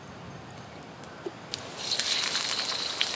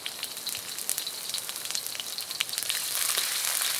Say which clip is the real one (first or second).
first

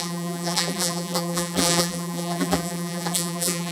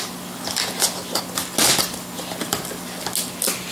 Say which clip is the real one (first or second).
second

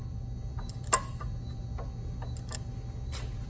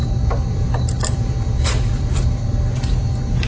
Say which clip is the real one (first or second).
first